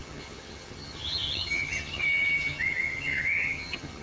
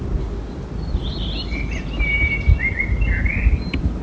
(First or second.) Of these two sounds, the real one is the second